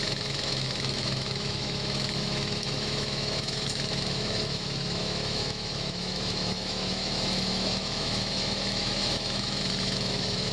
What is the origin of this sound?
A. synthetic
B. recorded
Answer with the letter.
A